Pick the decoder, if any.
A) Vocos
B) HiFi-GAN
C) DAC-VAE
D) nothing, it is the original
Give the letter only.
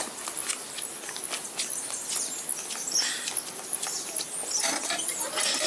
D